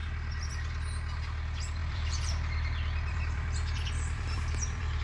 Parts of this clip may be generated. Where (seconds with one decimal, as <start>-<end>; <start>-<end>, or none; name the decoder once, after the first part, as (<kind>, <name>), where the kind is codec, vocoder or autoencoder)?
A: 0.0-0.5 (vocoder, BigVGAN v2); 1.8-5.0